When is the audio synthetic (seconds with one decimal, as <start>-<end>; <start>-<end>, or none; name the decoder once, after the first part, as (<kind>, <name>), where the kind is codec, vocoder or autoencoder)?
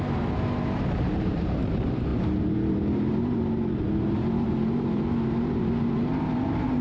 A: 0.0-2.1 (vocoder, BigVGAN v2); 2.7-6.8